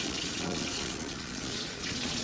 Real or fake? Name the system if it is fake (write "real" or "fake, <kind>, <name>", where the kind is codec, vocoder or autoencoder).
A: fake, vocoder, Vocos